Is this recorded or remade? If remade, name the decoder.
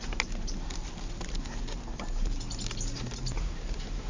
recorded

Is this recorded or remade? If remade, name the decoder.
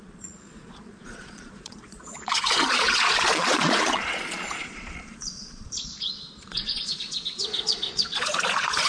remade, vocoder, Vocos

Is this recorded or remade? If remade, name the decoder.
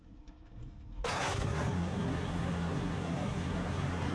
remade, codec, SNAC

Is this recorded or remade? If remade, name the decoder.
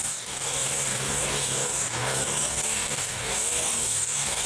remade, codec, DAC